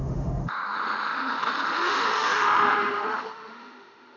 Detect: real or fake fake